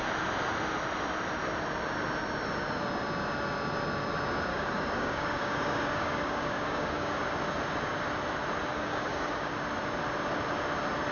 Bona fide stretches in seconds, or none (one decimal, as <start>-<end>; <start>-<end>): 0.0-4.5; 7.2-8.7; 9.5-11.1